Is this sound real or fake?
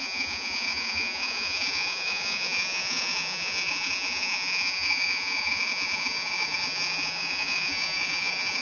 fake